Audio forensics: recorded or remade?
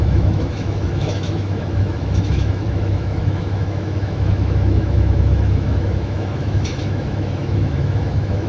remade